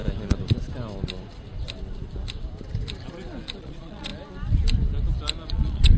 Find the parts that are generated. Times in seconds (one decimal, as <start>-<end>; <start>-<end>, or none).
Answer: 3.6-4.1; 5.5-6.0